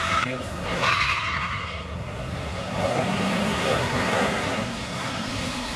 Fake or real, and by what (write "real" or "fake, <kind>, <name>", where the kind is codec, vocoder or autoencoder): fake, codec, SNAC